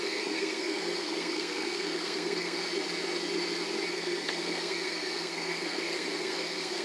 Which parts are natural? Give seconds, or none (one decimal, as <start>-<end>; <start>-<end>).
2.6-3.9